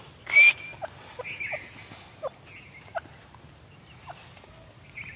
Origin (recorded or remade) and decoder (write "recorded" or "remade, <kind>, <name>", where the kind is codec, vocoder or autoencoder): recorded